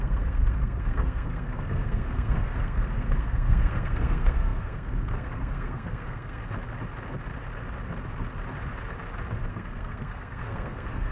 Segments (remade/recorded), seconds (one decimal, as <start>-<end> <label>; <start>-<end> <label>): 0.0-6.4 remade; 6.4-9.5 recorded; 9.5-11.1 remade